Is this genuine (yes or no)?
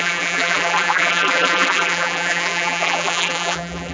no